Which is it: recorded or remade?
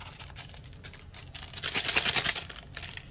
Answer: recorded